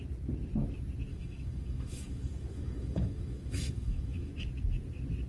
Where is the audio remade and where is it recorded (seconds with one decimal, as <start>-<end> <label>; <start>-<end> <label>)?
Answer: 0.0-1.1 recorded; 1.1-4.3 remade; 4.3-5.3 recorded